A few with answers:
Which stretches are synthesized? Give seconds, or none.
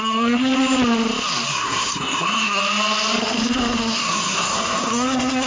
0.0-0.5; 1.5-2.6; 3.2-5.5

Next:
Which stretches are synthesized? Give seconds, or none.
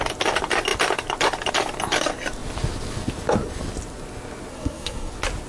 4.5-5.1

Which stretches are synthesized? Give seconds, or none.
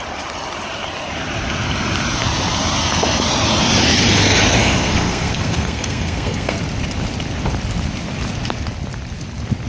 4.6-6.6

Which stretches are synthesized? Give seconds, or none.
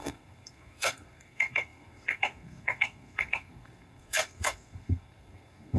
0.0-5.8